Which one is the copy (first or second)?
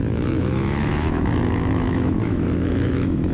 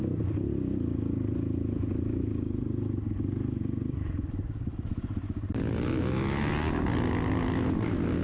first